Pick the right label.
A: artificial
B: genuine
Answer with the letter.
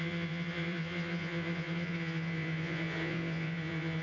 A